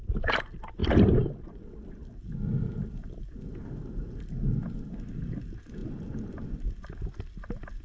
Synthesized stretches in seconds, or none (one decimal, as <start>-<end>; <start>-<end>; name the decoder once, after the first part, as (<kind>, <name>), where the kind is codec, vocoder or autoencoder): 0.8-3.9 (vocoder, BigVGAN v2); 5.8-6.8